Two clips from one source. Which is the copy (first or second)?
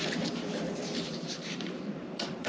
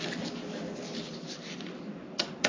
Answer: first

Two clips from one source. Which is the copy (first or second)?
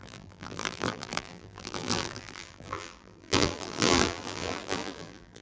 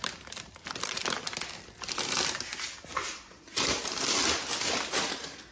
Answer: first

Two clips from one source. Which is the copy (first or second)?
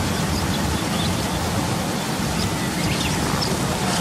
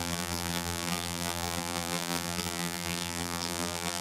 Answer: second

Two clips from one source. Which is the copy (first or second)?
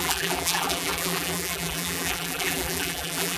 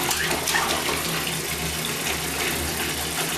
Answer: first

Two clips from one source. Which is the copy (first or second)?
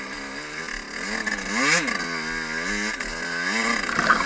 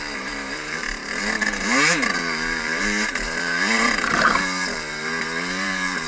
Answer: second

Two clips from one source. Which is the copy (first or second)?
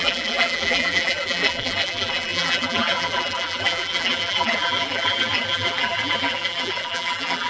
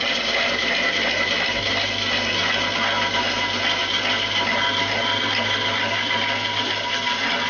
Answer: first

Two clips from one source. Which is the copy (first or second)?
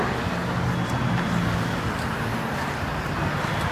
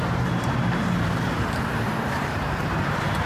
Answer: second